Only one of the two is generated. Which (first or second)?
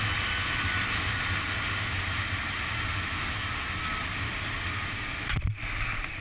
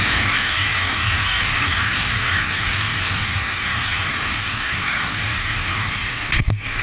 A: second